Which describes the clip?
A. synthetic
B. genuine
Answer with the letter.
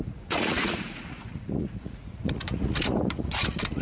A